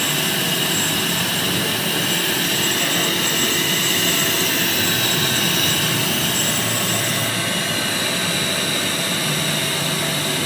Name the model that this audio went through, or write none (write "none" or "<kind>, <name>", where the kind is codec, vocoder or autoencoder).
none